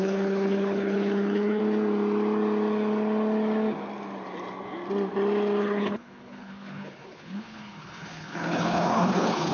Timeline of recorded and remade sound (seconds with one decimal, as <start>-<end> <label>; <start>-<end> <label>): 0.0-1.6 remade; 1.6-5.6 recorded; 5.6-9.5 remade

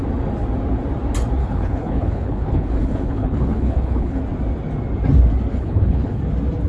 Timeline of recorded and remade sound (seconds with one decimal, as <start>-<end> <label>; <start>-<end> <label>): 0.0-1.4 recorded; 1.4-4.2 remade; 4.2-5.5 recorded; 5.5-6.2 remade; 6.2-6.7 recorded

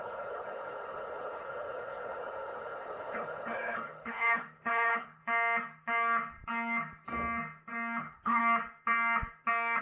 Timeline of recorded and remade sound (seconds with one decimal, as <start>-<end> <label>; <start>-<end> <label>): 0.0-5.2 remade; 5.2-8.0 recorded; 8.0-8.4 remade; 8.4-9.8 recorded